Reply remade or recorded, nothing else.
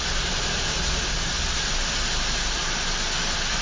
recorded